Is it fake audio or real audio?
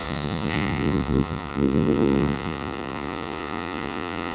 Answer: fake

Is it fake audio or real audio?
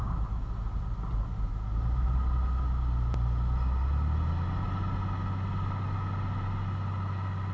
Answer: real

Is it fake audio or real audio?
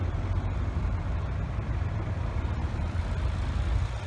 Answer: real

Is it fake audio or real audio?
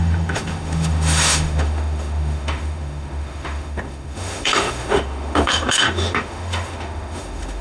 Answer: fake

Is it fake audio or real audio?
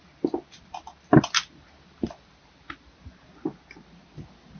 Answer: real